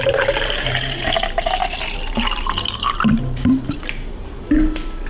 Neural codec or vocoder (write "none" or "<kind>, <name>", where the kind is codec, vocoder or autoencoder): vocoder, BigVGAN v2